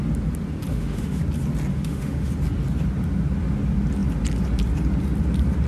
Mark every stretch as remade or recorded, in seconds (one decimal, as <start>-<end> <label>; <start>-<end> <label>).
0.0-0.7 recorded; 0.7-1.2 remade; 1.2-1.7 recorded; 1.7-2.3 remade; 2.3-5.7 recorded